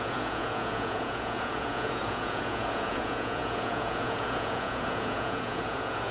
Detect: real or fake fake